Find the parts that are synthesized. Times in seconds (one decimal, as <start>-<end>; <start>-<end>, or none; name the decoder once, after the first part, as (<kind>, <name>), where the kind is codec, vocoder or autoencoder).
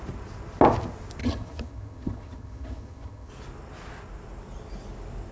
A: 1.2-3.3 (vocoder, HiFi-GAN)